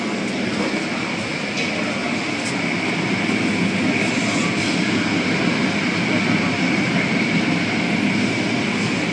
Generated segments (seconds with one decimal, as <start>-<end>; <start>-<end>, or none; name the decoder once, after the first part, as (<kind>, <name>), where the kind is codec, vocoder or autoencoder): none